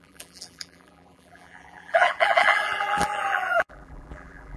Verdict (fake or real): fake